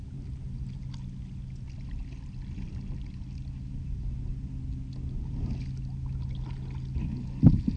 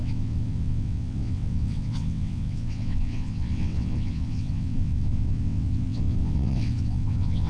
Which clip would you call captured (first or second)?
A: first